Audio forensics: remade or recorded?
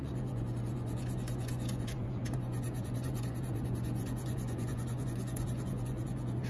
remade